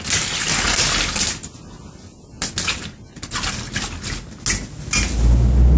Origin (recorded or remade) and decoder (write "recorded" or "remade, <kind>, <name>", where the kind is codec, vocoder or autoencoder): recorded